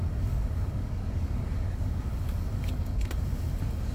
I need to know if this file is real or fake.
fake